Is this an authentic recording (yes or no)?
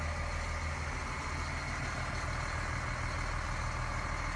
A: yes